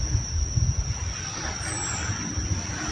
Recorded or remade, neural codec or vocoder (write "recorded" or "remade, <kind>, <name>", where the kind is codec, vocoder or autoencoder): recorded